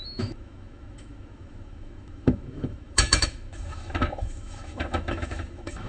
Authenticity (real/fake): fake